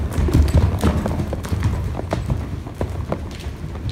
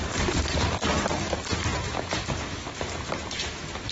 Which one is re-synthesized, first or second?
second